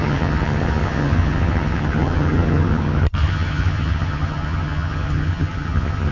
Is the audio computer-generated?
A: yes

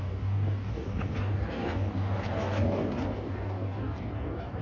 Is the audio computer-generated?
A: yes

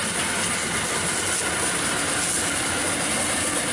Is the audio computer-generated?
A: no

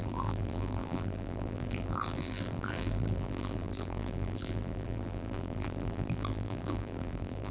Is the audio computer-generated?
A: yes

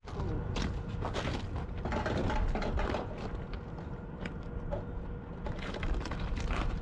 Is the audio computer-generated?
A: no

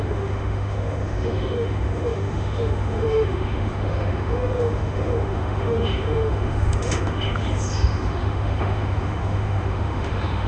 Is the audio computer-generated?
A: yes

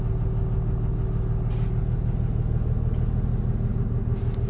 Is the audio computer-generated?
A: no